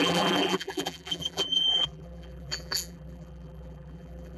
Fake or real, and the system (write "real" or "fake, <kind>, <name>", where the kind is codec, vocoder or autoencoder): fake, vocoder, BigVGAN v2